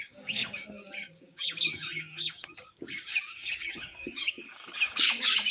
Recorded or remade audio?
remade